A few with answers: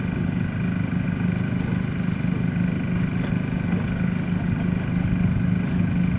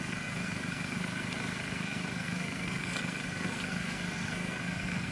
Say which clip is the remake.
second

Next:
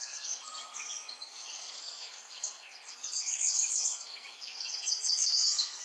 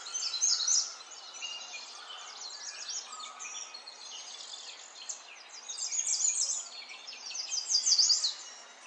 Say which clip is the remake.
first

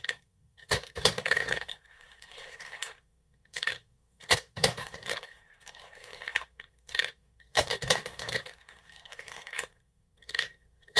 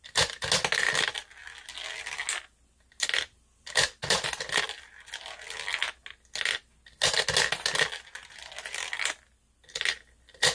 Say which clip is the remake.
first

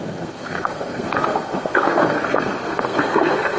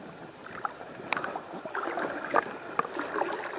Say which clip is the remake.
first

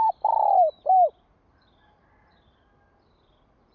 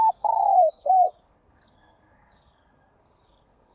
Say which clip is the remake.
second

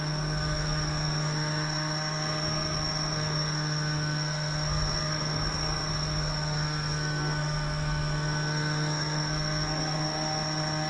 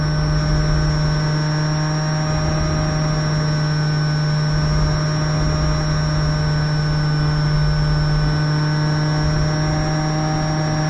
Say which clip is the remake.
first